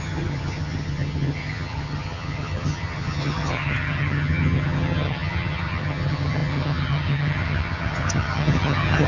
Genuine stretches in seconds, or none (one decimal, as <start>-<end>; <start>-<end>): none